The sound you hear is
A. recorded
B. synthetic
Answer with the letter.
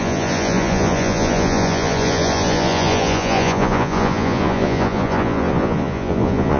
B